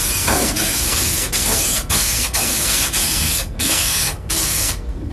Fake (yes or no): yes